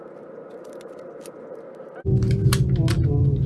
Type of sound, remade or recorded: recorded